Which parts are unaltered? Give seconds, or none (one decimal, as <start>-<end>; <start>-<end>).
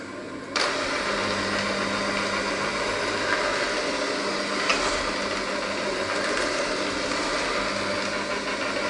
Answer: 0.0-8.9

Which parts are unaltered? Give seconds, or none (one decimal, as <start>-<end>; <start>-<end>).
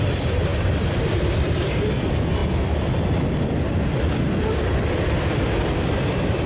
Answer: 2.4-4.9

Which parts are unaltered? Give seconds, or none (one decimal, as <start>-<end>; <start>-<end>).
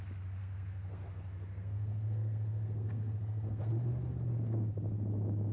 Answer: 0.0-0.4; 3.7-5.5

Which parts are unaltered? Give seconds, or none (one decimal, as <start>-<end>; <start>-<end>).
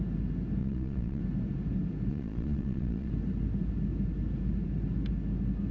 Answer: 0.0-0.6; 1.2-2.1; 3.1-5.7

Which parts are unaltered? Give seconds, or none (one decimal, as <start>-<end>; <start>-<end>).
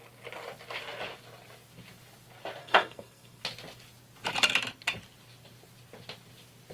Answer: 0.0-2.6; 3.4-6.7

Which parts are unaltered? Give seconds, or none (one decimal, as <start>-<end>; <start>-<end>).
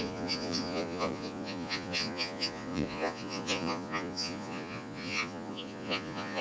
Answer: none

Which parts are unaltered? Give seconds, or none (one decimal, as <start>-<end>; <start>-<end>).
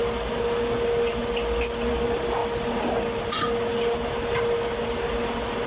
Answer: 0.0-5.7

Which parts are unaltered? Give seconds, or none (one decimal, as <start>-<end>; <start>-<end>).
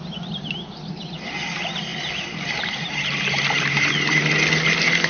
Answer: 0.0-1.9; 3.9-5.1